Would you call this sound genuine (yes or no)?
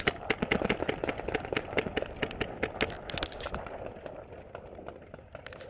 yes